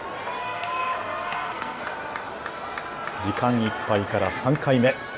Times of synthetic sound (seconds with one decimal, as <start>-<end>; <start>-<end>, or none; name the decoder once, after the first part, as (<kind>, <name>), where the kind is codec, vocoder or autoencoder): 0.4-1.8 (codec, SNAC)